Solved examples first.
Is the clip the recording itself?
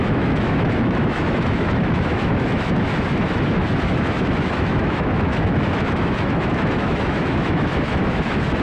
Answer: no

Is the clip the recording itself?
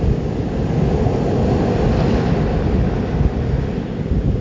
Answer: yes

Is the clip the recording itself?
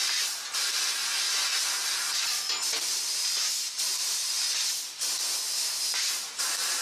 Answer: yes